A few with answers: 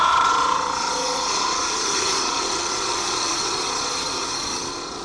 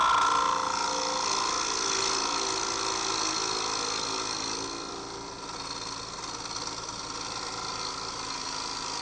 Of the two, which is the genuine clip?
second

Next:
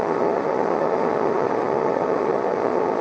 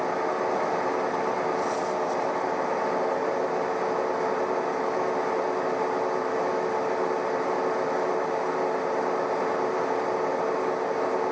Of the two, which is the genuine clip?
second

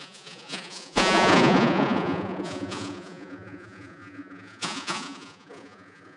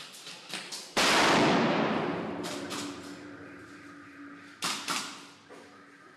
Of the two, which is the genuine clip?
second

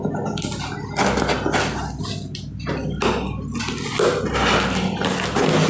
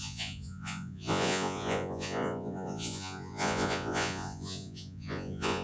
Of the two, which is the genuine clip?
first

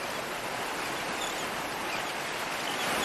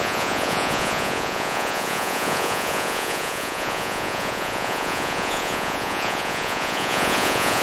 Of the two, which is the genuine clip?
first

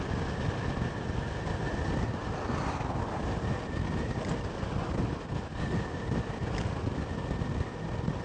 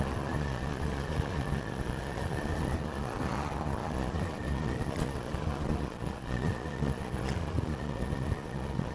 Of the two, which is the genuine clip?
first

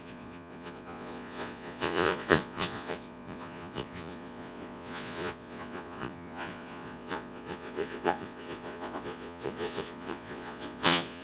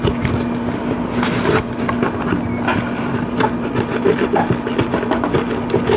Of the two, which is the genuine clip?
second